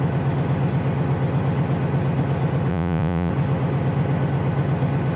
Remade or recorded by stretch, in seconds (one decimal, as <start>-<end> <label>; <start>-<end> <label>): 0.0-2.7 recorded; 2.7-3.3 remade; 3.3-5.2 recorded